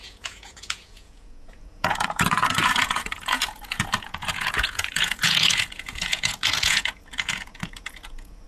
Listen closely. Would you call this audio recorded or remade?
remade